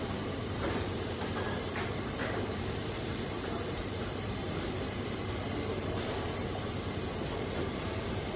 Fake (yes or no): yes